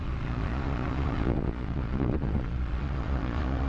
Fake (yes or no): yes